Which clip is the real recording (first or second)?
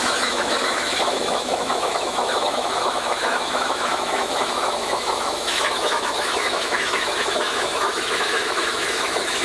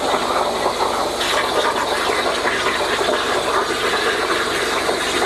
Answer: second